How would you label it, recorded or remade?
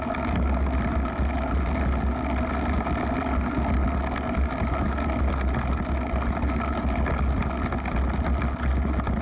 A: recorded